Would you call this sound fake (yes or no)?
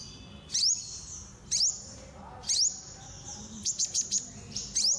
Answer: no